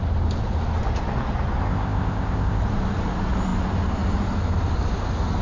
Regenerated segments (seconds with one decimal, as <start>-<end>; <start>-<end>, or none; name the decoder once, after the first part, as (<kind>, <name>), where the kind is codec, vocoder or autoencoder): 1.6-2.6 (codec, ZipCodec)